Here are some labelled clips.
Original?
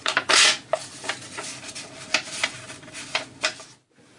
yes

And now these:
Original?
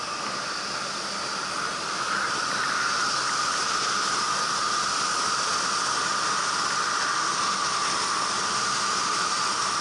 yes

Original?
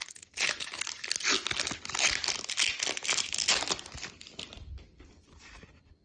yes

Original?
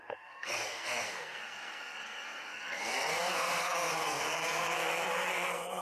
no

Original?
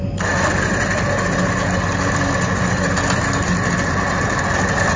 yes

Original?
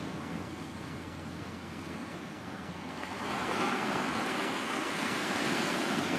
no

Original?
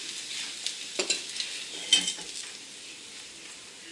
yes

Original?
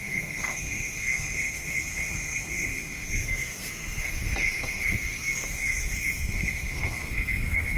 no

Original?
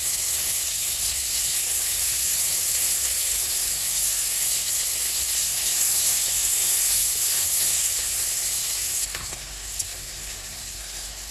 no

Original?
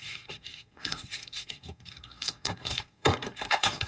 no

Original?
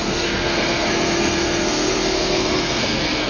no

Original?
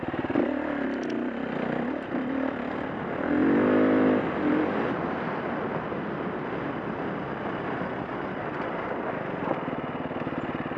yes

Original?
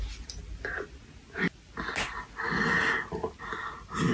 yes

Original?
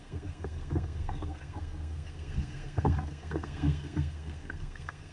no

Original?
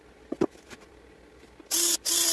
yes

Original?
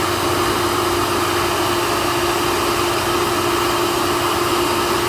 yes